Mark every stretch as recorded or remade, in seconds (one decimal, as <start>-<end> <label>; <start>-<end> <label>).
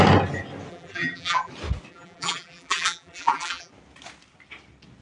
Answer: 0.0-0.7 recorded; 0.7-1.5 remade; 1.5-1.9 recorded; 1.9-3.7 remade; 3.7-5.0 recorded